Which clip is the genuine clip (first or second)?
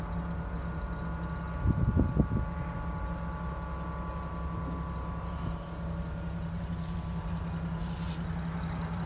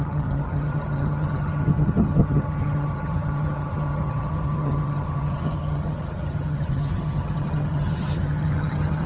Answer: first